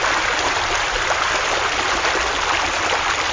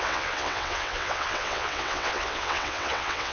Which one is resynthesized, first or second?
second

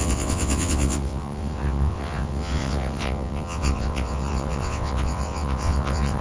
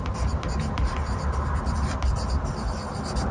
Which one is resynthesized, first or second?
first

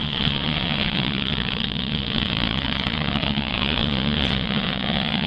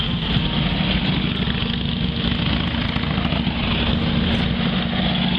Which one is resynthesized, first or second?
first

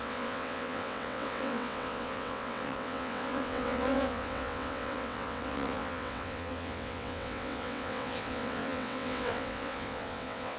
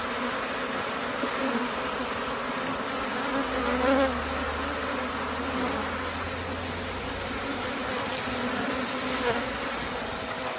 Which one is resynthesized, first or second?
first